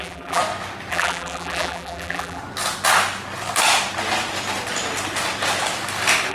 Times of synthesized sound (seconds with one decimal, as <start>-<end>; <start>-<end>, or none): 0.0-0.4; 0.9-2.4